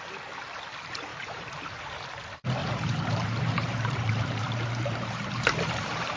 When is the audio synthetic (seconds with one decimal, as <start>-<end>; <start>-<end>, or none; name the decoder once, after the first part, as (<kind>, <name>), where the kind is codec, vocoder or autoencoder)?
1.1-2.1 (vocoder, BigVGAN v2); 2.6-6.2